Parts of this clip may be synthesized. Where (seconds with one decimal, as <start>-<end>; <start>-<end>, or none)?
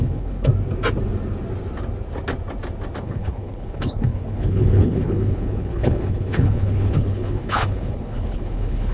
0.0-0.5; 3.0-8.9